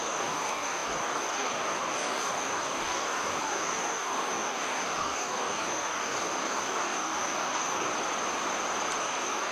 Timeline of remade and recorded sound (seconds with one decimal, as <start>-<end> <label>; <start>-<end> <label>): 0.0-7.9 remade; 7.9-9.0 recorded; 9.0-9.5 remade